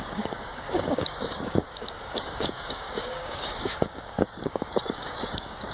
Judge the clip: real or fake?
fake